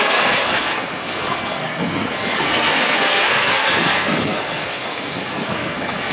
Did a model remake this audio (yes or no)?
yes